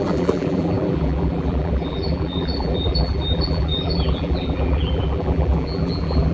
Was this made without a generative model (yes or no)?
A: no